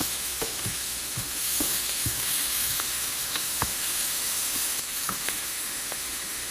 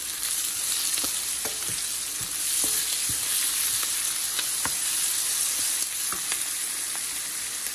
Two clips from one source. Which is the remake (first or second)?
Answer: first